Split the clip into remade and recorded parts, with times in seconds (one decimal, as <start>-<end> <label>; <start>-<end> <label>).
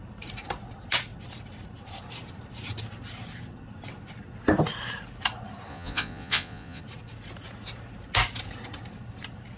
0.0-5.7 recorded; 5.7-6.8 remade; 6.8-9.6 recorded